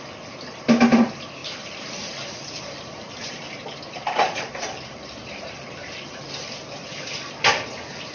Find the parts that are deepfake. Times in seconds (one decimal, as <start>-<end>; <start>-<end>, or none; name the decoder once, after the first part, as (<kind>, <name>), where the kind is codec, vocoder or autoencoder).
1.4-6.2 (vocoder, BigVGAN v2)